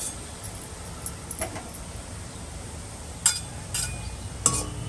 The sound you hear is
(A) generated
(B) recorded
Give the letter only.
B